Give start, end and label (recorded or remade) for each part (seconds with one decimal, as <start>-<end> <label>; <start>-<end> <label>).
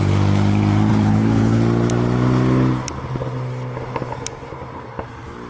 0.0-0.9 recorded; 0.9-1.6 remade; 1.6-5.5 recorded